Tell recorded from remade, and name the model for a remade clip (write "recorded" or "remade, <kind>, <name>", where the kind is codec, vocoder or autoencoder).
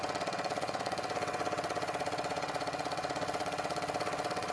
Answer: remade, vocoder, WaveNeXt